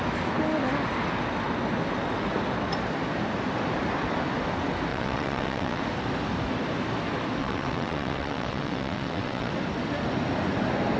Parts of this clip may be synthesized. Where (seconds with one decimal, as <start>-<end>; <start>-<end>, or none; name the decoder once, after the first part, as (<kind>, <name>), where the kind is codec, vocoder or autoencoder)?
4.9-5.8 (vocoder, WaveNeXt); 7.4-9.5